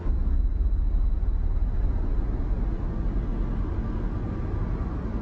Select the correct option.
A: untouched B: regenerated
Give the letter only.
A